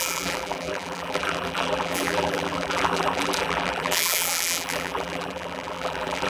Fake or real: fake